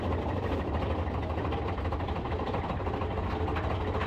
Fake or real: real